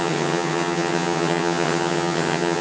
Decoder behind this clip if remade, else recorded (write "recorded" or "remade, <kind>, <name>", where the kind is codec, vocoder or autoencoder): remade, vocoder, HiFi-GAN